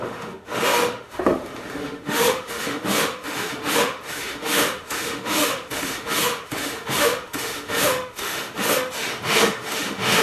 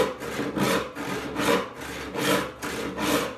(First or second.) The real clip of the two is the second